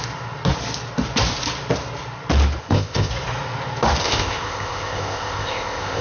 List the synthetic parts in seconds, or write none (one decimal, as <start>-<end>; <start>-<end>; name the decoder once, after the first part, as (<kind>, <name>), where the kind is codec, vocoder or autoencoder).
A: 2.6-3.1 (codec, ZipCodec); 4.0-6.0